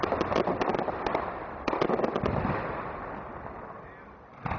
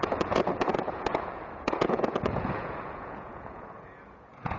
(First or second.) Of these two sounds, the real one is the first